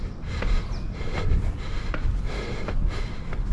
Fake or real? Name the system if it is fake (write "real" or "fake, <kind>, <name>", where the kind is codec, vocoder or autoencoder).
real